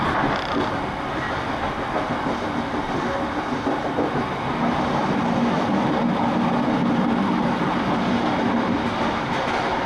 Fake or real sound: real